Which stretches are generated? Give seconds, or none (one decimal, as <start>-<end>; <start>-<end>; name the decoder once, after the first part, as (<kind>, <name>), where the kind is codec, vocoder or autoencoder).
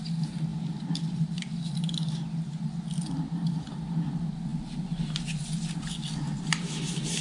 0.5-2.3 (vocoder, BigVGAN v2)